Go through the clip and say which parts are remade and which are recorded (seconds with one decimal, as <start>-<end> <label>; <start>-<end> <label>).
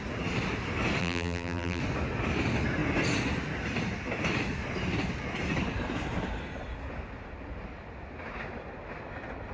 0.0-1.0 recorded; 1.0-1.8 remade; 1.8-9.5 recorded